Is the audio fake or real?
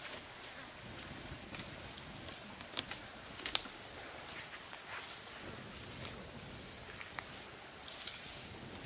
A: real